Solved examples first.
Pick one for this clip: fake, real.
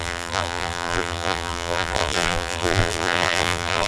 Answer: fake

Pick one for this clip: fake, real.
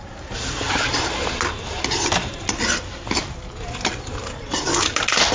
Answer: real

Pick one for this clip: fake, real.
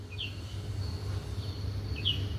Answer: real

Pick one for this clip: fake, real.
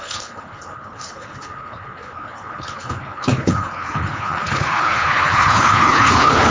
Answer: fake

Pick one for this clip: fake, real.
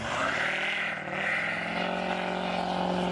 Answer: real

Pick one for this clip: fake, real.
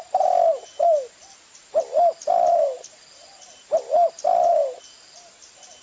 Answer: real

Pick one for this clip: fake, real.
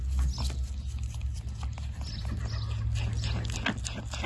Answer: real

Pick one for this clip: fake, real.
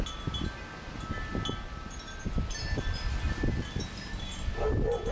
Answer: real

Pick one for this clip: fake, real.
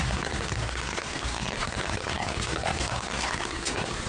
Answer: fake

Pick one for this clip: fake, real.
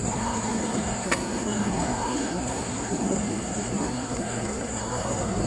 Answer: fake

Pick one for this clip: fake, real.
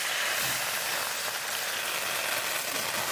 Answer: real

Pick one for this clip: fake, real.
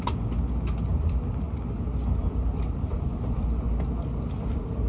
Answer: real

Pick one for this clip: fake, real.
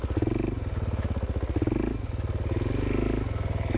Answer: real